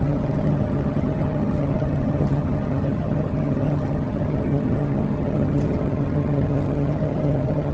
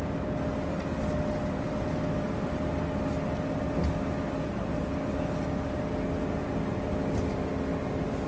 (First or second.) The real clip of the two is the second